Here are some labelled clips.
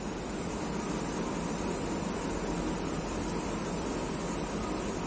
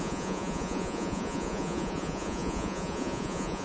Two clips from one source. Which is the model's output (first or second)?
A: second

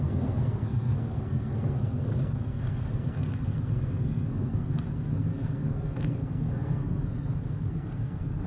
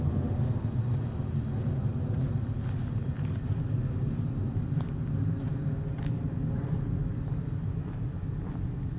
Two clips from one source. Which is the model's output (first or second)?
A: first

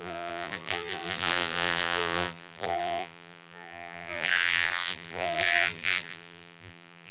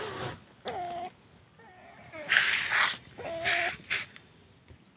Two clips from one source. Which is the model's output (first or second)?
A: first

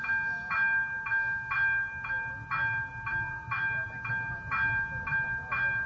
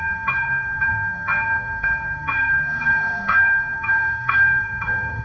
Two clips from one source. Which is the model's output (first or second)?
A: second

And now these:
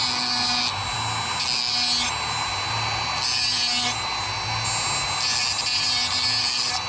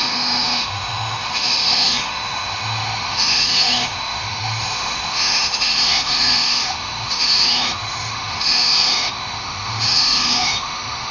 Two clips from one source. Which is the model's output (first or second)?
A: second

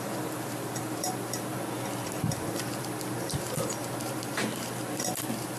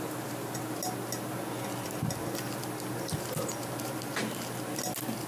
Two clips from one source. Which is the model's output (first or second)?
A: first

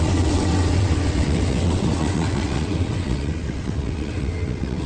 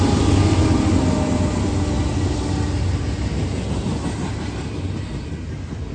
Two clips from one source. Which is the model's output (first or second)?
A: first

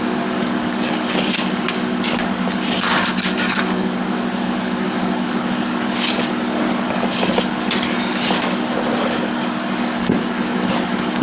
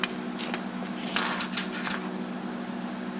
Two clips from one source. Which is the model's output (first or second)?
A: first